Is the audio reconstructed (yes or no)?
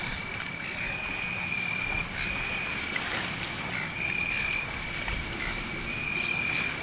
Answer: no